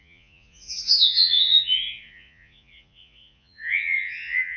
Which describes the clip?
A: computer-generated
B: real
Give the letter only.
A